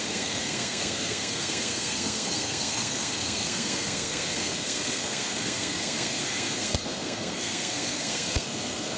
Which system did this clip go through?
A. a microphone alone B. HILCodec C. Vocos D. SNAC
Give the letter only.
D